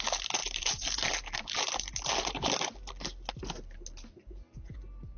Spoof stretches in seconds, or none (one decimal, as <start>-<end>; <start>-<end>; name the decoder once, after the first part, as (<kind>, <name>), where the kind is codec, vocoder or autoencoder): 0.4-2.7 (vocoder, BigVGAN v2)

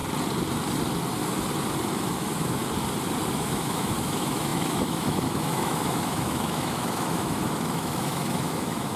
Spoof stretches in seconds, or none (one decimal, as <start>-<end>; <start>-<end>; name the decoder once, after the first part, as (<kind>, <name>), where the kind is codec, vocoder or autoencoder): 1.9-2.6 (autoencoder, DAC-VAE); 3.3-9.0

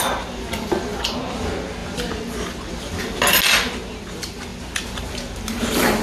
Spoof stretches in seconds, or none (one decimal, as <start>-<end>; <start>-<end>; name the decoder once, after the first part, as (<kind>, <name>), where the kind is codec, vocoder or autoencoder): none

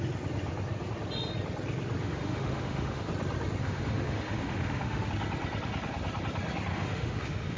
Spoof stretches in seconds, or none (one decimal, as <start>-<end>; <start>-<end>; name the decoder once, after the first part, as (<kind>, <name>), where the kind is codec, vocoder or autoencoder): 2.0-3.1 (autoencoder, DAC-VAE); 3.6-5.1; 6.7-7.6